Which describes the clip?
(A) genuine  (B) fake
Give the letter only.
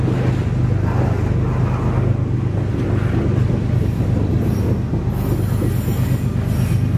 A